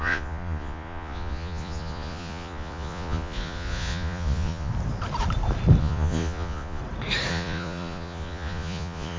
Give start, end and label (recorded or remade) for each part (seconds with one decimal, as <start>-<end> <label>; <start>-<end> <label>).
0.0-4.7 remade; 4.7-5.8 recorded; 5.8-6.8 remade; 6.8-7.3 recorded; 7.3-9.2 remade